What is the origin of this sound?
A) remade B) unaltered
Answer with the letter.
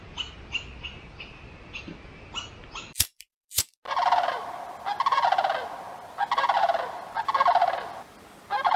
B